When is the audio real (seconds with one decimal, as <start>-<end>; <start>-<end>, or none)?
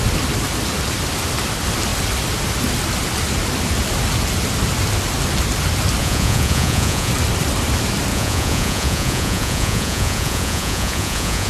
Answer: 0.0-6.0; 7.1-8.1